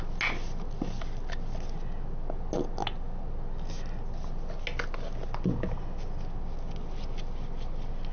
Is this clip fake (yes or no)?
no